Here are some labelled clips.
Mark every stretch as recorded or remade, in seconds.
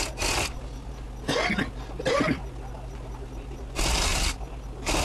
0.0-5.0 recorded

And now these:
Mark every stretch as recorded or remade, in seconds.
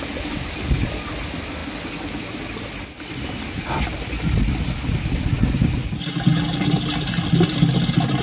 0.0-8.2 recorded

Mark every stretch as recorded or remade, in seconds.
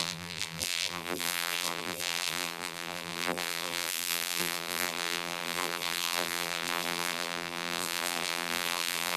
0.0-9.2 remade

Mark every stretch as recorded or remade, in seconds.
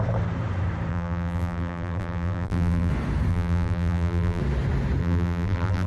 0.0-0.9 recorded; 0.9-2.9 remade; 2.9-3.3 recorded; 3.3-4.4 remade; 4.4-5.0 recorded; 5.0-5.9 remade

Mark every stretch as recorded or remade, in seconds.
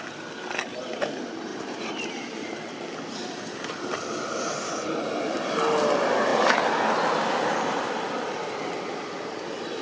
0.0-1.5 recorded; 1.5-5.0 remade; 5.0-9.8 recorded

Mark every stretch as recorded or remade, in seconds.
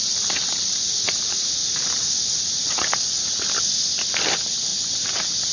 0.0-3.3 remade; 3.3-4.7 recorded; 4.7-5.5 remade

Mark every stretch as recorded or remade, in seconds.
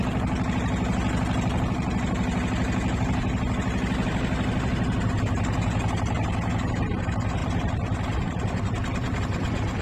0.0-7.4 recorded; 7.4-9.2 remade; 9.2-9.8 recorded